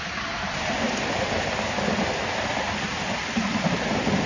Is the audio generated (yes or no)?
no